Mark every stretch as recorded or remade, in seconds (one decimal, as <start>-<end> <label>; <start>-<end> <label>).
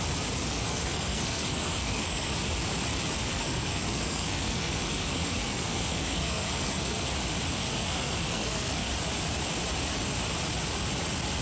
0.0-0.4 recorded; 0.4-2.3 remade; 2.3-3.3 recorded; 3.3-7.1 remade; 7.1-7.6 recorded; 7.6-8.9 remade; 8.9-11.4 recorded